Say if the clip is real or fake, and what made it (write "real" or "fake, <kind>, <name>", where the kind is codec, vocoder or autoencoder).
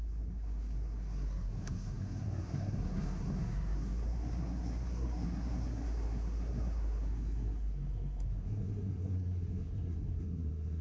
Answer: fake, codec, SNAC